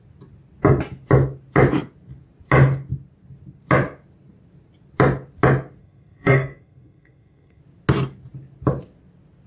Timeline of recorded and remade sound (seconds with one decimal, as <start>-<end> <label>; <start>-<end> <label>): 0.0-5.8 recorded; 5.8-7.6 remade; 7.6-9.5 recorded